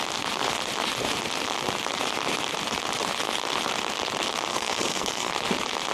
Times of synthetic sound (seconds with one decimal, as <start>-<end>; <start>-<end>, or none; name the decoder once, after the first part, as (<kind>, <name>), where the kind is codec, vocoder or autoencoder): 4.5-5.3 (codec, SNAC)